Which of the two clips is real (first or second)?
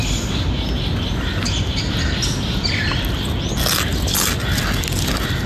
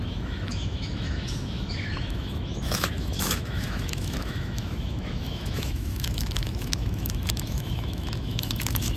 first